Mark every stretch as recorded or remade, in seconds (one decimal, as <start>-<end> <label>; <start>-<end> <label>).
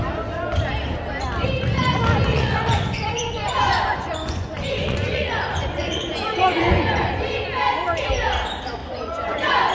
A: 0.0-2.3 recorded; 2.3-7.1 remade; 7.1-8.8 recorded; 8.8-9.7 remade